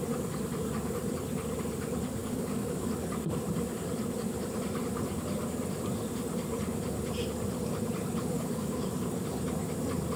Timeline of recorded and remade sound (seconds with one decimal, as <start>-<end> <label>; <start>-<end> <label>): 0.0-2.2 recorded; 2.2-2.9 remade; 2.9-8.2 recorded; 8.2-8.9 remade; 8.9-10.2 recorded